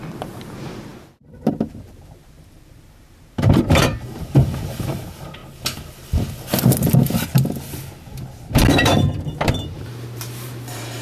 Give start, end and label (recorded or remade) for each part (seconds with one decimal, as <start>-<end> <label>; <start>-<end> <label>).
0.0-5.4 remade; 5.4-9.5 recorded; 9.5-11.0 remade